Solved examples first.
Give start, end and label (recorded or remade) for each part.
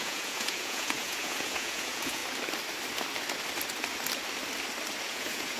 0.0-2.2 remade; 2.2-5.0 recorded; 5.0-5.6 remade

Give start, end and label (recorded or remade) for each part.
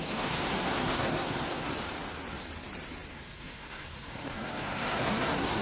0.0-1.7 remade; 1.7-3.1 recorded; 3.1-5.6 remade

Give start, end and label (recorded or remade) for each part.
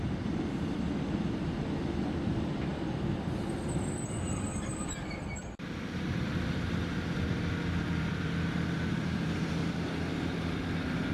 0.0-9.6 remade; 9.6-10.7 recorded; 10.7-11.1 remade